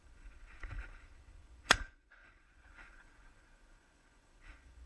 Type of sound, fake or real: fake